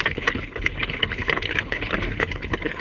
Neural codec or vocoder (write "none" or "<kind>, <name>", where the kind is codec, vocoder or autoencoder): codec, HILCodec